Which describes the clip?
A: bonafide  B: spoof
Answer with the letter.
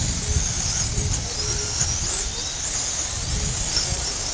A